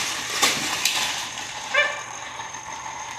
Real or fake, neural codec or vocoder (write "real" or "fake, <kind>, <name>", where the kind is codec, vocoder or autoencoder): fake, vocoder, BigVGAN v2